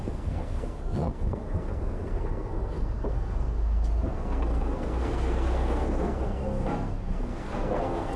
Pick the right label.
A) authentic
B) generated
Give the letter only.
B